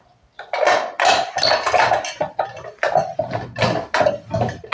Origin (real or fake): real